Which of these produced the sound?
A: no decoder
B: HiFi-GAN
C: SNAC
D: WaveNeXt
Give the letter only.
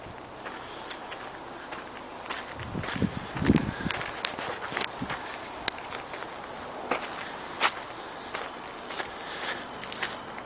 A